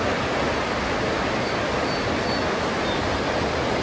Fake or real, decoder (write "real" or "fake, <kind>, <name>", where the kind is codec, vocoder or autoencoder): real